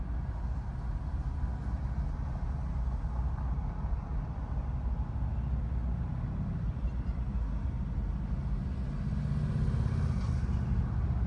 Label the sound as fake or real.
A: real